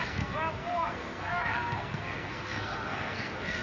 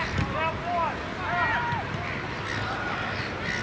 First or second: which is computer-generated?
first